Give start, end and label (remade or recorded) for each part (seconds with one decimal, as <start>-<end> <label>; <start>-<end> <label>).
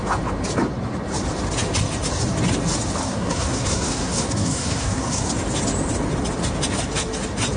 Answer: 0.0-3.0 recorded; 3.0-5.3 remade; 5.3-7.6 recorded